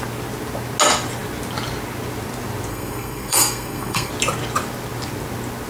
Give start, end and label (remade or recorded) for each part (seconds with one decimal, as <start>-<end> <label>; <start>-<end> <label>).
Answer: 0.0-2.7 recorded; 2.7-4.1 remade; 4.1-5.7 recorded